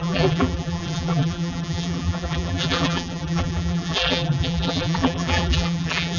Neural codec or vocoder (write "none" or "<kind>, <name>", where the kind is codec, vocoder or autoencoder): vocoder, BigVGAN v2